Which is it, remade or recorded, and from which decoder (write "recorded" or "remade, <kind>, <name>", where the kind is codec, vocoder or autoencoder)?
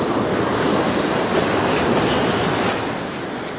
recorded